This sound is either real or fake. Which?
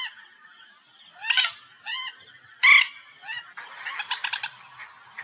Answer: real